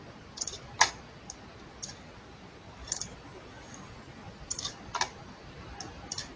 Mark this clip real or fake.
real